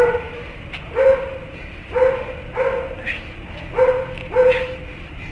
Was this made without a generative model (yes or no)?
yes